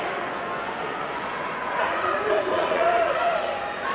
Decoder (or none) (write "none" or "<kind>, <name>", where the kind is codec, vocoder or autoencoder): vocoder, Vocos